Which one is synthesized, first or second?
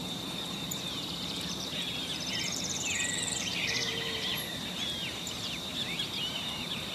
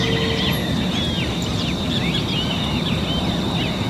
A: first